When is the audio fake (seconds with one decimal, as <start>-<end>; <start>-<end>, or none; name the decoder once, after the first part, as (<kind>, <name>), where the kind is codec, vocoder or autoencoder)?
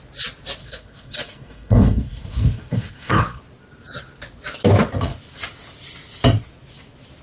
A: 0.6-3.4 (codec, SNAC)